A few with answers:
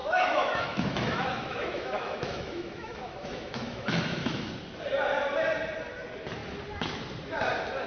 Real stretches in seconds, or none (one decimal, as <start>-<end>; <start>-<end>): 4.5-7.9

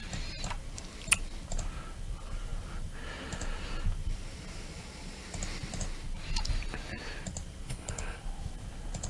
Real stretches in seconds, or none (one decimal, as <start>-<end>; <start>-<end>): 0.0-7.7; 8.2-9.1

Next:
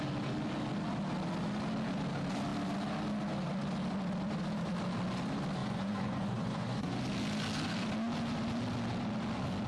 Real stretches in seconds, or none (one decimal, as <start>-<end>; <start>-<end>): 0.0-5.6; 7.0-9.7

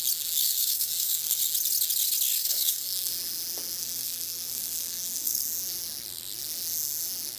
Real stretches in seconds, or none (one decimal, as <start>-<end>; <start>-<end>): 0.0-0.4; 1.4-2.4; 3.1-3.8; 5.3-7.4

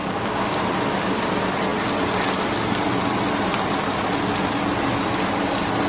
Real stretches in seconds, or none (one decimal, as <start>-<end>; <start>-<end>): 0.6-5.9